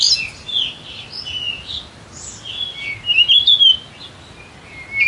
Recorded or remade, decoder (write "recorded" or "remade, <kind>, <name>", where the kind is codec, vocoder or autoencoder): recorded